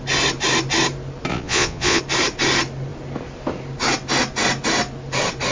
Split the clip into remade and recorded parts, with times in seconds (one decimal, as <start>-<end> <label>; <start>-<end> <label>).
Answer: 0.0-1.3 recorded; 1.3-2.0 remade; 2.0-5.5 recorded

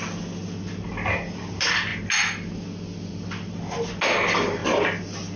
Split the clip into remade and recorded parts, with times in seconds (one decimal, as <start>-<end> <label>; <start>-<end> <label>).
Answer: 0.0-5.4 recorded

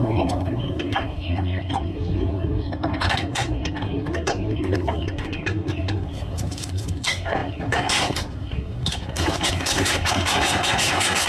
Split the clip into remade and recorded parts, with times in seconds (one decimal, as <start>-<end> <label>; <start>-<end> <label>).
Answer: 0.0-11.3 remade